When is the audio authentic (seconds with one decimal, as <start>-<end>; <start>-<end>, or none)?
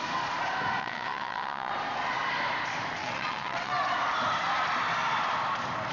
0.0-0.8; 1.7-3.0; 3.7-5.9